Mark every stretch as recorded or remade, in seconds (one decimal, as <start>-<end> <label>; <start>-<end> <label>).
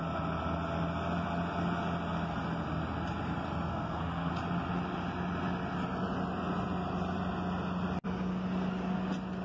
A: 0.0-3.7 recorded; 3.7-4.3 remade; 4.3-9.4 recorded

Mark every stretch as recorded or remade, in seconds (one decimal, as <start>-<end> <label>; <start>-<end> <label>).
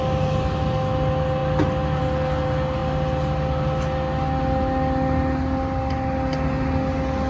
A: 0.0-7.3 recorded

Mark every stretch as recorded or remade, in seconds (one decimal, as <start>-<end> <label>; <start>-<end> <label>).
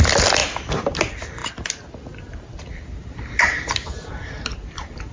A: 0.0-5.1 recorded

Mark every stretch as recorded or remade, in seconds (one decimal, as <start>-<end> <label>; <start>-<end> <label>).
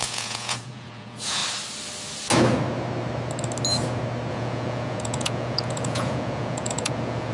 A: 0.0-1.4 remade; 1.4-4.3 recorded; 4.3-7.3 remade